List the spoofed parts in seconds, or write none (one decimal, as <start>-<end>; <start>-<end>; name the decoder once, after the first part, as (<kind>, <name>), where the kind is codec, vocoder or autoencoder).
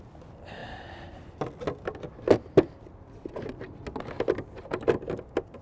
none